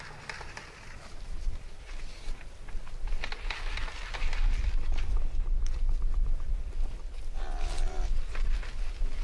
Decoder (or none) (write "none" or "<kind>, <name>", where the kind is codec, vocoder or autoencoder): none